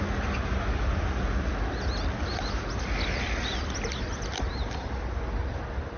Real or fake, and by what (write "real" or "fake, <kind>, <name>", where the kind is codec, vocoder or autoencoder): real